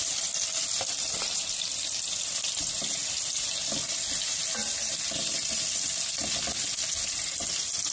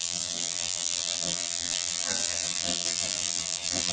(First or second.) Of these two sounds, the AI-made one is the second